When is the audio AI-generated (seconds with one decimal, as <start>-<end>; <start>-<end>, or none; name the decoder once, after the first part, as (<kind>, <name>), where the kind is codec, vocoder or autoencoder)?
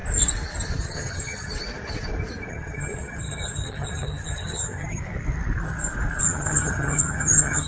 0.8-1.5 (vocoder, HiFi-GAN); 2.5-5.0; 6.2-7.7